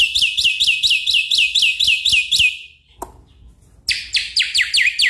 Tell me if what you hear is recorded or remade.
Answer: recorded